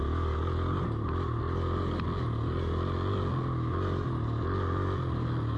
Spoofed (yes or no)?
no